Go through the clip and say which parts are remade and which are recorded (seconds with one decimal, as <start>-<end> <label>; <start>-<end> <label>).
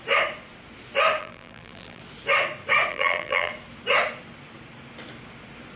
0.0-1.2 recorded; 1.2-2.0 remade; 2.0-2.9 recorded; 2.9-3.5 remade; 3.5-5.8 recorded